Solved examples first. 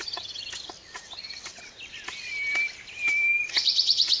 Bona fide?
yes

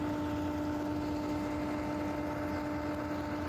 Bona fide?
yes